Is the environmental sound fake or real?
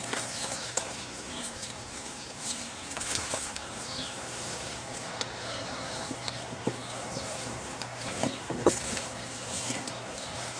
fake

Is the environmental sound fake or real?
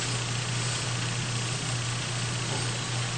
real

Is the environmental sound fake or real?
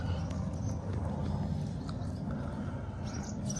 real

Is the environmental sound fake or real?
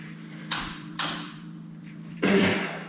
fake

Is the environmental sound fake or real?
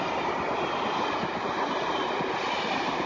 real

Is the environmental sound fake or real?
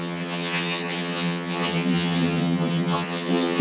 fake